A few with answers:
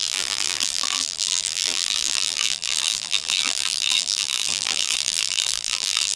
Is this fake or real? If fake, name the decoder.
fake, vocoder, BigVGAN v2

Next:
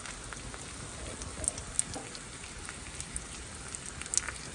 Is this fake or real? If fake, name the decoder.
real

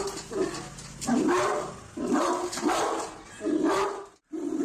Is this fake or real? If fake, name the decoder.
real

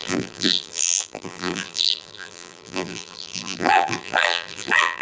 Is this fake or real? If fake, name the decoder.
fake, vocoder, BigVGAN v2